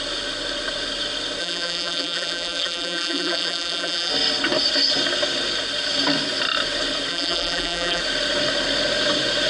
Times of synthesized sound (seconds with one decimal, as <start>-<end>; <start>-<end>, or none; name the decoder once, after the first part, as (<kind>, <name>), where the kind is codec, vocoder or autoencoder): 1.4-4.1 (vocoder, BigVGAN v2); 7.1-8.0